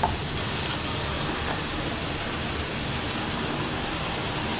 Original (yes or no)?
yes